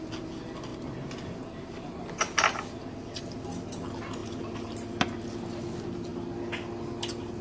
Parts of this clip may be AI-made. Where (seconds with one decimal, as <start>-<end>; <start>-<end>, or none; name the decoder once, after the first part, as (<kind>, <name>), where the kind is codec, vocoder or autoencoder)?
none